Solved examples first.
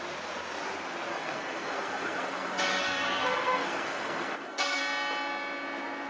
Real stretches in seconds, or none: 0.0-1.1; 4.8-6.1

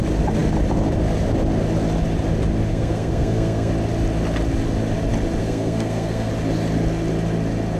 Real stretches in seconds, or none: 0.0-2.7; 3.7-5.4; 6.3-7.8

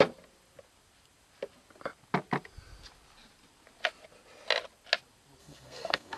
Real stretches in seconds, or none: 0.0-5.4

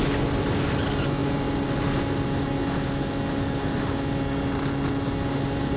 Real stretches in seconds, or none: 0.0-5.8